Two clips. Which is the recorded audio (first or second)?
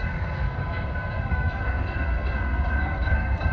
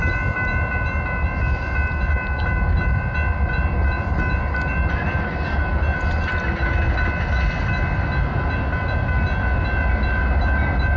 second